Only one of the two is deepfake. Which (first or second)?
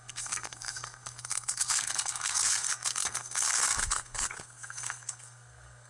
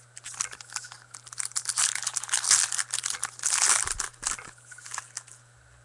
first